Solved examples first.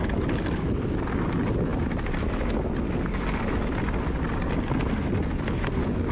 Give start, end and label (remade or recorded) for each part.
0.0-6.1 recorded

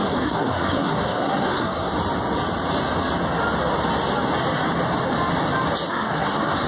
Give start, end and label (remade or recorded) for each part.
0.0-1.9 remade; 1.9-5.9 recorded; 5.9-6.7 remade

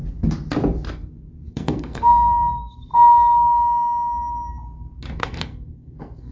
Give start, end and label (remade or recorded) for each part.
0.0-1.5 recorded; 1.5-2.9 remade; 2.9-5.2 recorded; 5.2-6.3 remade

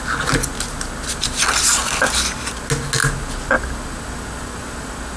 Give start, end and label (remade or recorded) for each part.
0.0-5.2 recorded

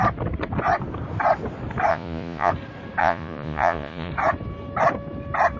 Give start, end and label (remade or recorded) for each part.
0.0-1.9 recorded; 1.9-2.5 remade; 2.5-3.0 recorded; 3.0-4.1 remade; 4.1-5.6 recorded